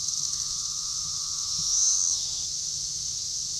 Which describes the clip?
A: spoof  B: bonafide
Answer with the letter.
A